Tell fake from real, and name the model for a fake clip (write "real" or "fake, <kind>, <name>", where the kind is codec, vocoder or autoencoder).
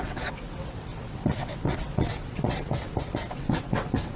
fake, vocoder, WaveNeXt